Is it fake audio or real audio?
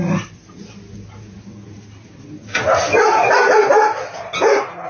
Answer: real